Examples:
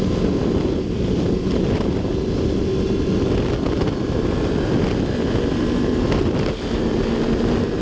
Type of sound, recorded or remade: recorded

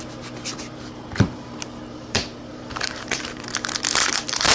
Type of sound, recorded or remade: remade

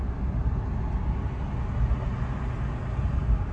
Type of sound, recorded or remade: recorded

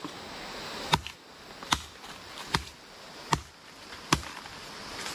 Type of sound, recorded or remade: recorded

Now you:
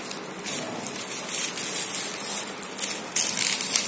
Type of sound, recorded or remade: recorded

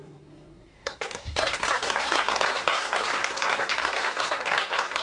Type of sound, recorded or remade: remade